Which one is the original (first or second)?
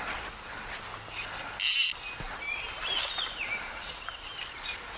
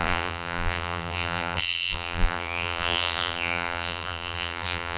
first